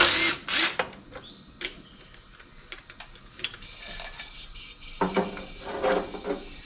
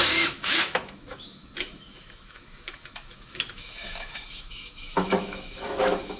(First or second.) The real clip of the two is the first